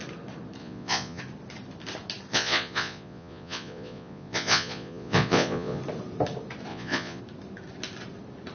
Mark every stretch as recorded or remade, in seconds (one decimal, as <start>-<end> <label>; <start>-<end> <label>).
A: 0.0-0.6 recorded; 0.6-1.2 remade; 1.2-2.3 recorded; 2.3-5.8 remade; 5.8-6.7 recorded; 6.7-7.2 remade; 7.2-8.5 recorded